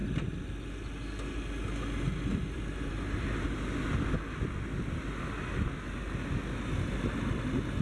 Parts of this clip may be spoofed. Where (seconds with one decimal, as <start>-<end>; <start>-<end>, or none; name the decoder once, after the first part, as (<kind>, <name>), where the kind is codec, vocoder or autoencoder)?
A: none